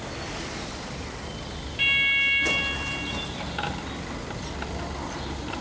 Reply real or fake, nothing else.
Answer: real